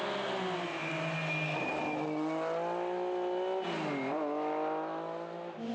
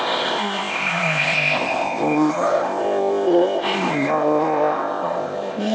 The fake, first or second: second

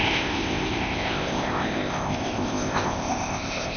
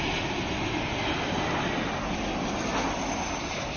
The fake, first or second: first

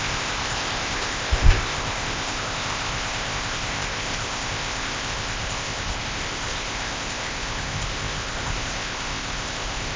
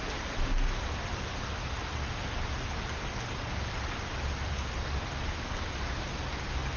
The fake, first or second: first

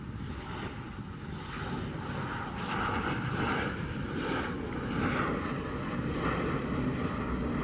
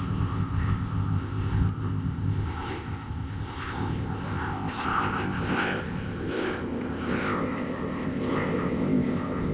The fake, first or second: second